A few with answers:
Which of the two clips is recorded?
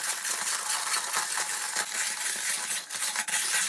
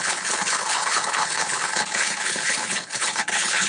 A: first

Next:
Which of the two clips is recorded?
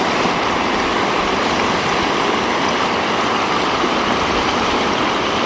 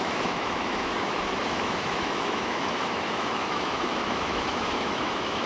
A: first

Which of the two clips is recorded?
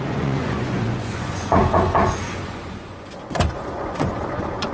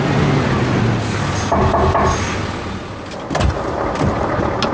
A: second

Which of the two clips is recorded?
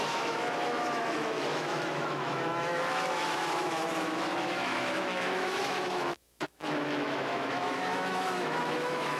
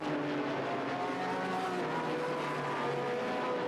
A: second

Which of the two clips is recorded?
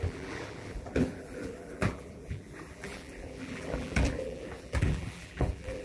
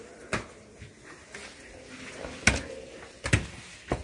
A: second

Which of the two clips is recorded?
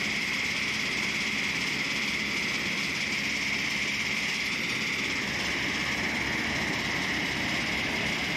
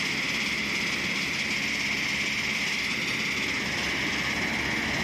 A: second